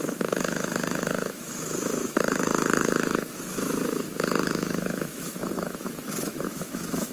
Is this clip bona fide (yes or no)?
no